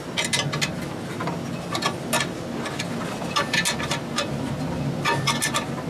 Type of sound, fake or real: real